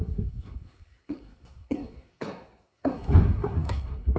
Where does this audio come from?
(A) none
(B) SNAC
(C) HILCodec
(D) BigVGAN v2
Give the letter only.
B